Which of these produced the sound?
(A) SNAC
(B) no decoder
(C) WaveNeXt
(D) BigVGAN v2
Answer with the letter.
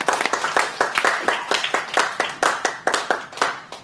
B